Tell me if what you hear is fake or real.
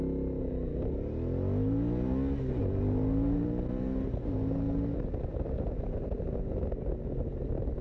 real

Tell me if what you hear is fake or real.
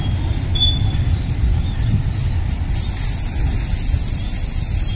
real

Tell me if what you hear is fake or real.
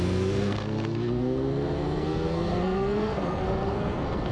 fake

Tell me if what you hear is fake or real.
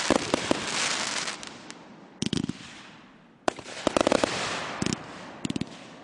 fake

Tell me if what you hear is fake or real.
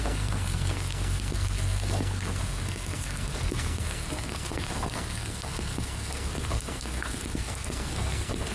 fake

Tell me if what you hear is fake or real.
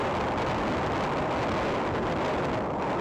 real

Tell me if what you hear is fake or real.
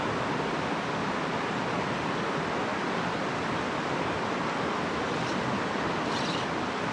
real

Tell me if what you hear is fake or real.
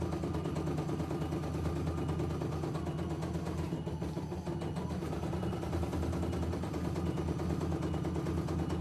real